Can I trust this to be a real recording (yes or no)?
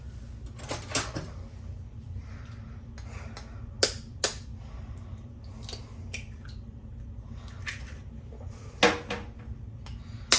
yes